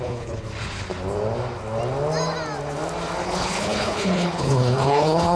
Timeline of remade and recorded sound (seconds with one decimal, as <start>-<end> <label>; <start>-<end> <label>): 0.0-0.5 remade; 0.5-3.2 recorded; 3.2-5.4 remade